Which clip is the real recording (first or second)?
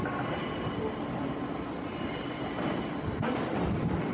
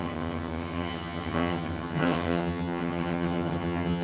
first